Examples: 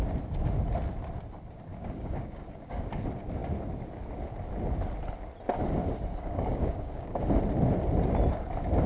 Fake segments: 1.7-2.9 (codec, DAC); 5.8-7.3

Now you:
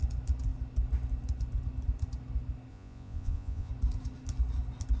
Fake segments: 2.7-3.7 (vocoder, Vocos)